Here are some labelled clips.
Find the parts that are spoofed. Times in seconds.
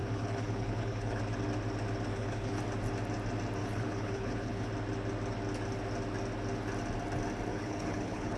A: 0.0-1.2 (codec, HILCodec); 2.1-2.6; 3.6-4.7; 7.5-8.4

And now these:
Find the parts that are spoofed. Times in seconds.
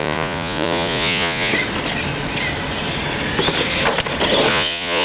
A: 0.0-1.5 (vocoder, Vocos); 4.5-5.0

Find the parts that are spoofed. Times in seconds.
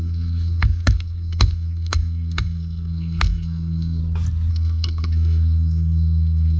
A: 0.0-4.0 (codec, SNAC); 4.5-6.6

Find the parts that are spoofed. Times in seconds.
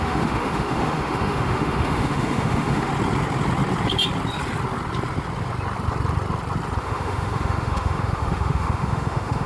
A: 0.0-2.9 (autoencoder, DAC-VAE); 6.8-9.5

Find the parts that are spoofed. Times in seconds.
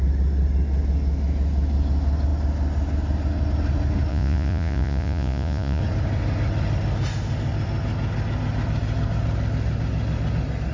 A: 4.1-5.8 (vocoder, Vocos)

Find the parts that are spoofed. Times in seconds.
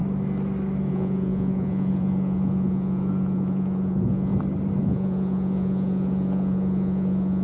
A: 0.9-4.3 (vocoder, Vocos); 4.8-7.4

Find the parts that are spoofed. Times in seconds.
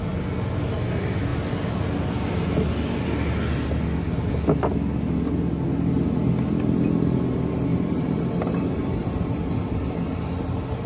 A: 7.7-8.3 (vocoder, BigVGAN v2)